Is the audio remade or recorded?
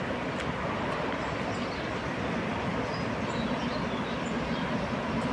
recorded